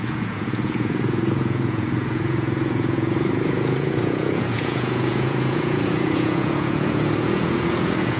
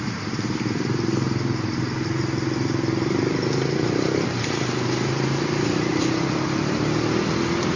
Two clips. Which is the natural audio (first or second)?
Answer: second